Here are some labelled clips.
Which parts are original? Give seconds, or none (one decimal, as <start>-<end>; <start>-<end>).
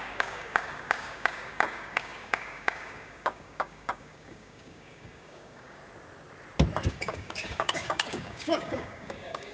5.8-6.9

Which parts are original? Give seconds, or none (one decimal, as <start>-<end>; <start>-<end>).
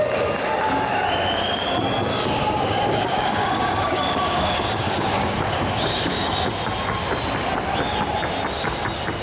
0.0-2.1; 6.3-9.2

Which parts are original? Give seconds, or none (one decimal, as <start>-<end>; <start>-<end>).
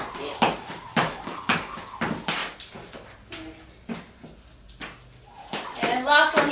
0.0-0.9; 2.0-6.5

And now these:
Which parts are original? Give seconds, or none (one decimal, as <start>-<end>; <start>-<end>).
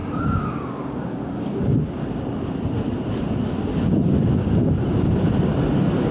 2.0-4.4; 5.3-6.1